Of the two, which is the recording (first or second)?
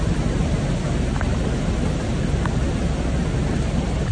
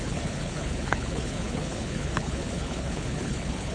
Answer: first